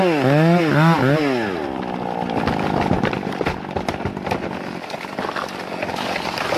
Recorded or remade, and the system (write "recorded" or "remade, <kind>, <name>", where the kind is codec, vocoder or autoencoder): recorded